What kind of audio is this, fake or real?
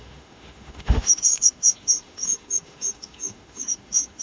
fake